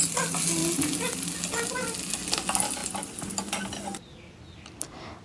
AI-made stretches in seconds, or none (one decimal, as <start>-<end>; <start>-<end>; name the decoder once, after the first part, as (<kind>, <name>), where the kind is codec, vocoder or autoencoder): none